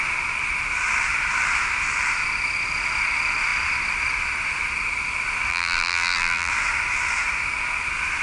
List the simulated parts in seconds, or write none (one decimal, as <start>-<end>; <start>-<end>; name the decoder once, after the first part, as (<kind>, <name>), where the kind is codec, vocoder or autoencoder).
5.5-6.5 (vocoder, BigVGAN v2)